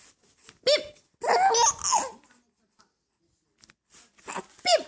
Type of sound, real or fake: real